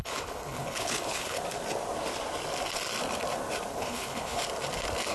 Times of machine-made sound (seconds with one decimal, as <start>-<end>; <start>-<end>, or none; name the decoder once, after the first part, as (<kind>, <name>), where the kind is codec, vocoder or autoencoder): 0.0-1.4 (codec, HILCodec); 3.7-4.4